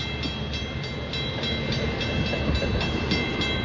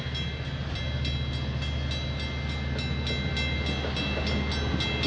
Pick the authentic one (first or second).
second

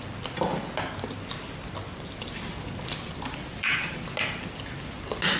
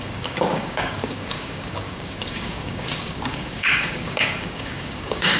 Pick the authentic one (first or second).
first